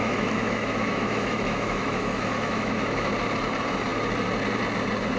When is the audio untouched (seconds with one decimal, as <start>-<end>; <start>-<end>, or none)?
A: 3.1-5.2